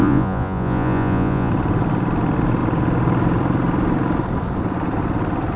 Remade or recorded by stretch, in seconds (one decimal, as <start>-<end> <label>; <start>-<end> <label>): 0.0-1.5 remade; 1.5-5.6 recorded

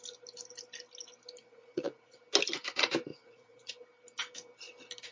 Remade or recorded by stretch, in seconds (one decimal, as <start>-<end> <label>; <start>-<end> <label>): 0.0-1.4 recorded; 1.4-2.2 remade; 2.2-3.1 recorded; 3.1-3.7 remade; 3.7-5.1 recorded

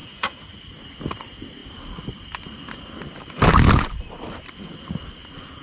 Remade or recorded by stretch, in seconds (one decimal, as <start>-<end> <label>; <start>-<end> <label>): 0.0-0.7 remade; 0.7-5.6 recorded

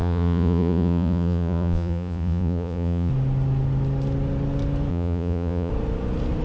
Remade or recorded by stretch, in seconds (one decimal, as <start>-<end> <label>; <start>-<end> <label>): 0.0-3.1 remade; 3.1-4.9 recorded; 4.9-5.7 remade; 5.7-6.4 recorded